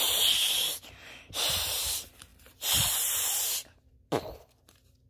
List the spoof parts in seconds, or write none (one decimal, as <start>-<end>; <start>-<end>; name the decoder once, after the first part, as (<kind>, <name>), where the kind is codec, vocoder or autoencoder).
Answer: none